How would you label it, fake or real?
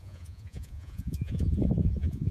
fake